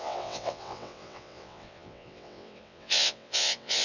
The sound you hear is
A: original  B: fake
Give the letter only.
B